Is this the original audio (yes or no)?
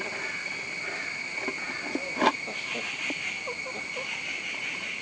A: yes